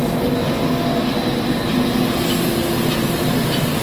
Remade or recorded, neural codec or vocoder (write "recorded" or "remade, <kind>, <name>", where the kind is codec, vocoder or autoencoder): recorded